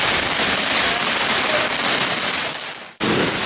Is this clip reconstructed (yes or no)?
no